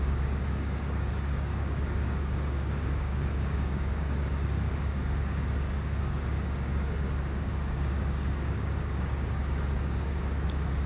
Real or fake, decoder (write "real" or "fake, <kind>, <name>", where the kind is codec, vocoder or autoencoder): fake, codec, DAC